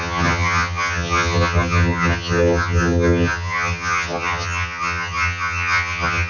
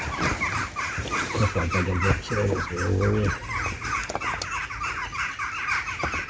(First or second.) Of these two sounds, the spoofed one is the first